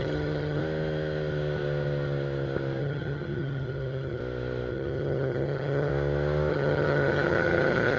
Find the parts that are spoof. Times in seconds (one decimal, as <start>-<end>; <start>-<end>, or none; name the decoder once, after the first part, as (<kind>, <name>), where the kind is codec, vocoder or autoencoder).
0.0-0.6 (vocoder, HiFi-GAN); 2.8-4.2; 4.7-5.9; 6.5-8.0